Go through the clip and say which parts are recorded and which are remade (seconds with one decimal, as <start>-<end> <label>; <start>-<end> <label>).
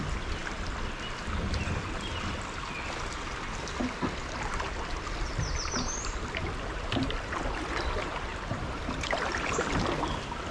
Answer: 0.0-8.3 recorded; 8.3-9.1 remade; 9.1-10.5 recorded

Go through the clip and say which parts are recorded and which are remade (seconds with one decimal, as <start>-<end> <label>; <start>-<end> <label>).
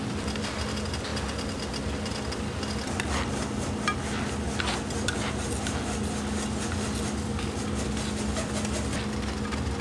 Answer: 0.0-9.8 recorded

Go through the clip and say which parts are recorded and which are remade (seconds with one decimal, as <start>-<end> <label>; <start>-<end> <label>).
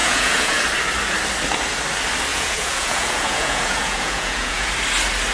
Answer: 0.0-0.6 remade; 0.6-2.3 recorded; 2.3-4.7 remade; 4.7-5.3 recorded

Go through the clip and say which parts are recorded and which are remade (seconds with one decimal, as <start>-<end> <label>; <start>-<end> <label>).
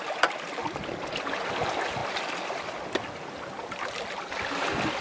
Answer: 0.0-5.0 recorded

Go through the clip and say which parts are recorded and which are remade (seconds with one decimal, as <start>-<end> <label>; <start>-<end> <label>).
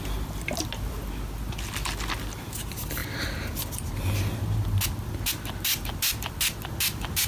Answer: 0.0-7.3 recorded